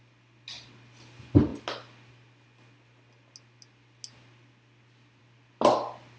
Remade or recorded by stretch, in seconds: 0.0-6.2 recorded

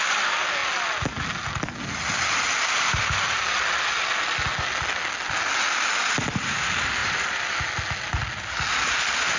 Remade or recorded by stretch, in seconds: 0.0-9.4 recorded

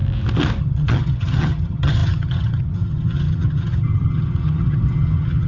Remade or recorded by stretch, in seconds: 0.0-0.6 recorded; 0.6-5.5 remade

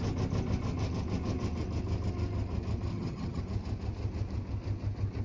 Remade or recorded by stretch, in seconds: 0.0-2.9 recorded; 2.9-3.4 remade; 3.4-5.2 recorded

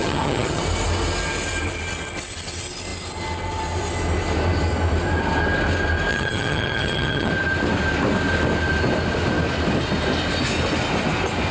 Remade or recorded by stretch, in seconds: 0.0-0.6 remade; 0.6-6.1 recorded; 6.1-7.3 remade; 7.3-11.5 recorded